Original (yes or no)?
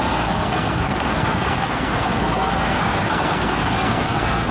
no